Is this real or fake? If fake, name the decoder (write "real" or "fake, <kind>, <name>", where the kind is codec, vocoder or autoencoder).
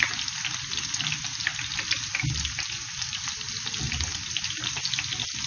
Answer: real